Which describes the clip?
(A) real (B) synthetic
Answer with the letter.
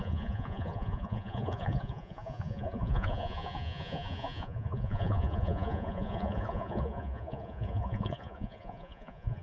B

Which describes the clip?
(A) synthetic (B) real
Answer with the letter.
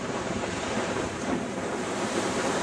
A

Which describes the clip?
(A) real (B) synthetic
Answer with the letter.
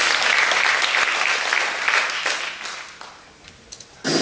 A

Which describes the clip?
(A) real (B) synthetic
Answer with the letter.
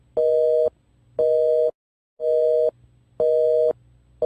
A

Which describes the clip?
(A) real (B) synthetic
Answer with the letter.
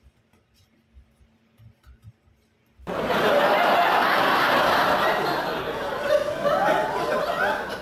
A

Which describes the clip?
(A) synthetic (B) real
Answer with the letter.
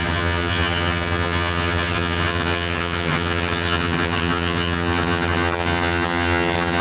A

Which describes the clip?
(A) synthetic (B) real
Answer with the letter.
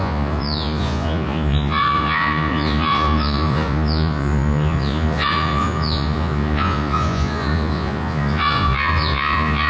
A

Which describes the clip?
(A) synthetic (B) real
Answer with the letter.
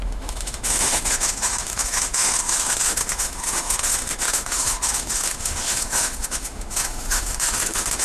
A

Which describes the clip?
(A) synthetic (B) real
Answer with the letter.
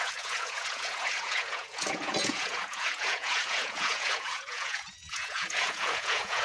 A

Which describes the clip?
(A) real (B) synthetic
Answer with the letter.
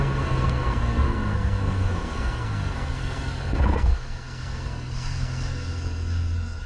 B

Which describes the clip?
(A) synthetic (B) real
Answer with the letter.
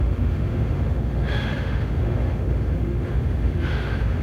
A